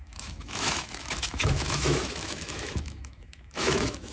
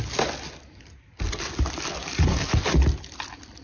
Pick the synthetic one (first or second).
first